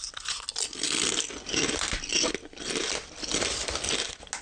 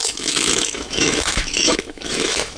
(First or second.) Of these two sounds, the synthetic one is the second